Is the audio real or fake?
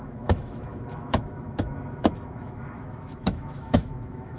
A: fake